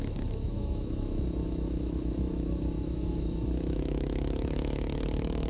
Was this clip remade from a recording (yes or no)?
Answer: yes